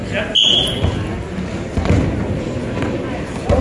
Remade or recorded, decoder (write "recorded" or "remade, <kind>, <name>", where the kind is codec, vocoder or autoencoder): recorded